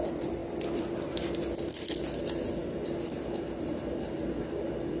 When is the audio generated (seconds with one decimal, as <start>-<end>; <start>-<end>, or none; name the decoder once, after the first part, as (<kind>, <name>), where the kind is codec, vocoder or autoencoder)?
none